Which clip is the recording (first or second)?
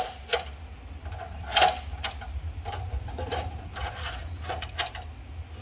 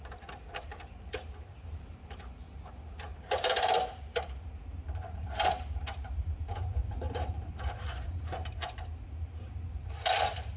first